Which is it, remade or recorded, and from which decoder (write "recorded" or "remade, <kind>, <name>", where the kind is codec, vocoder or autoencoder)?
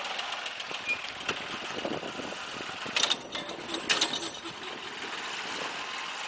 recorded